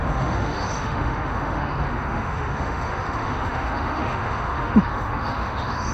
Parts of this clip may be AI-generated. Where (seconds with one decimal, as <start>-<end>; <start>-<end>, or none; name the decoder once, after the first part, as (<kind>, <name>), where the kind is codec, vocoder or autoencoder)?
0.0-5.9 (autoencoder, DAC-VAE)